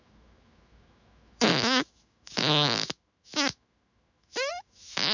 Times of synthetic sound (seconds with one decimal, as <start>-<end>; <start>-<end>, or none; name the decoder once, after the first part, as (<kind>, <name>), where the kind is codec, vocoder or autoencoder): 0.0-5.1 (autoencoder, DAC-VAE)